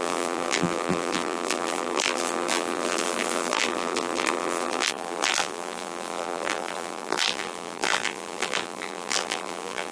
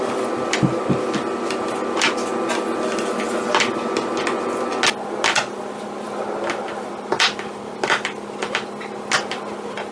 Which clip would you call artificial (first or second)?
first